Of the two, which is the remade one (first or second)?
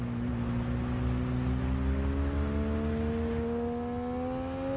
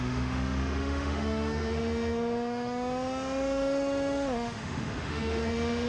second